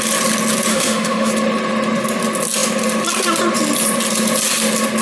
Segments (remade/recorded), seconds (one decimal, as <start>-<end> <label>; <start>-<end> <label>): 0.0-0.7 recorded; 0.7-1.3 remade; 1.3-5.0 recorded